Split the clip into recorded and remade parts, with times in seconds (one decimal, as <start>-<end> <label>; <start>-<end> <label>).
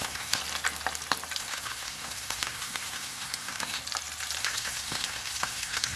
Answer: 0.0-0.4 remade; 0.4-1.4 recorded; 1.4-3.8 remade; 3.8-4.4 recorded; 4.4-6.0 remade